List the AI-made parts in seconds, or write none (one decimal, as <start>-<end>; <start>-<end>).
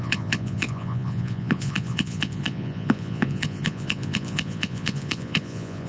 0.0-5.9